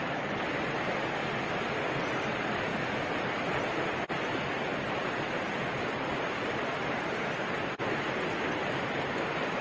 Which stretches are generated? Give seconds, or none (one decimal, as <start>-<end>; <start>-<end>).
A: none